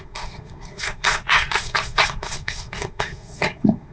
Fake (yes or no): yes